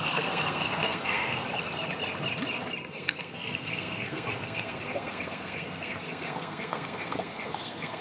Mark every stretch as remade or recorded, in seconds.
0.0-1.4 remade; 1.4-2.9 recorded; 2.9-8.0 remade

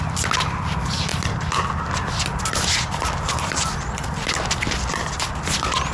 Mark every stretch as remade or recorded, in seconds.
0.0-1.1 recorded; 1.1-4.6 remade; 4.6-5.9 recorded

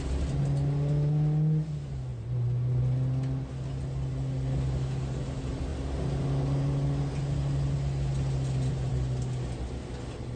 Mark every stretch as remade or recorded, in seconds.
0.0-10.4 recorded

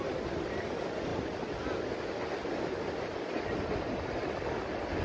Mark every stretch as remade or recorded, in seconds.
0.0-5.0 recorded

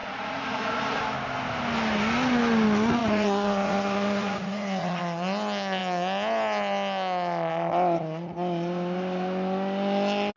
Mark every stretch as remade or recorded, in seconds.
0.0-1.0 remade; 1.0-3.0 recorded; 3.0-5.0 remade; 5.0-10.4 recorded